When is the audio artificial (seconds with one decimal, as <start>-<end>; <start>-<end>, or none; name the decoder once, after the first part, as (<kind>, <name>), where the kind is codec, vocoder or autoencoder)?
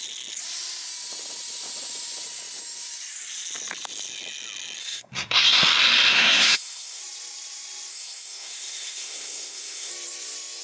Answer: 4.8-5.6 (codec, SNAC); 6.1-7.0; 7.9-9.9